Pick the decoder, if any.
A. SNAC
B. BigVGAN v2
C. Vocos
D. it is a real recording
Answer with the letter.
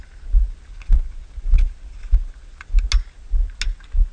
D